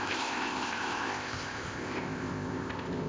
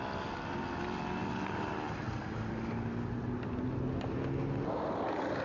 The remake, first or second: first